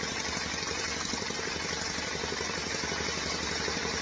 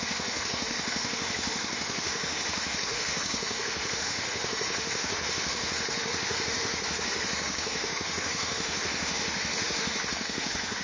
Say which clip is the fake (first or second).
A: second